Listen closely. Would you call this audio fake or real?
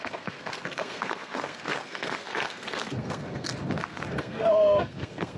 fake